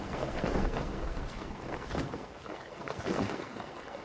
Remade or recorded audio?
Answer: remade